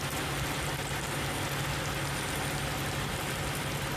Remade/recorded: recorded